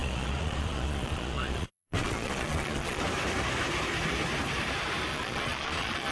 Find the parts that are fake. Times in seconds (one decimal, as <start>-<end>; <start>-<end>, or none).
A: 0.0-3.0; 5.1-6.1